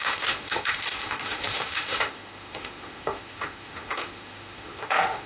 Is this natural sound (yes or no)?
no